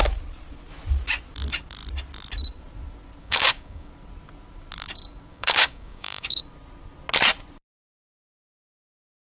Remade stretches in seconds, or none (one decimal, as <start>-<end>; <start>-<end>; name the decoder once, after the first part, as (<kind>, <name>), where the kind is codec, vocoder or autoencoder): 3.2-3.9 (codec, DAC); 5.3-6.4